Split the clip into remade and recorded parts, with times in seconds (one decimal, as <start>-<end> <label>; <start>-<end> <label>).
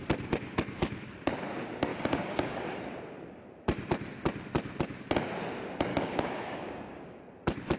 0.0-1.9 recorded; 1.9-2.8 remade; 2.8-5.9 recorded; 5.9-7.2 remade; 7.2-7.8 recorded